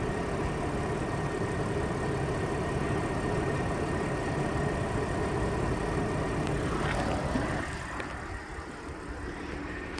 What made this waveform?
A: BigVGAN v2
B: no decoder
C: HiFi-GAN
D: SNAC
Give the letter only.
B